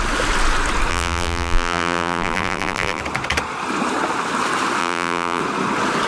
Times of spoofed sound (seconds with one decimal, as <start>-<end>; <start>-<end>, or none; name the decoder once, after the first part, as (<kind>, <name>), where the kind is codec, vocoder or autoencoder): 0.9-3.0 (vocoder, BigVGAN v2); 4.8-5.4